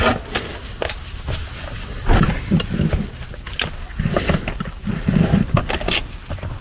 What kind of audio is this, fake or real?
real